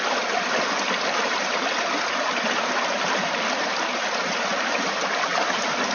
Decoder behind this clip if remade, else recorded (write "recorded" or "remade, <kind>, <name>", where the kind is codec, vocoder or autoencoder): recorded